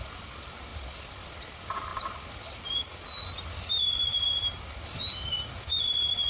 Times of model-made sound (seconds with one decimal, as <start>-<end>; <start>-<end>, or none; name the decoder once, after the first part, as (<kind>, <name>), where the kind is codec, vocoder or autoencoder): none